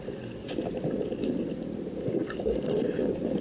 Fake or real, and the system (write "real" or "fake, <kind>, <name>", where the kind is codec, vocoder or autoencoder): real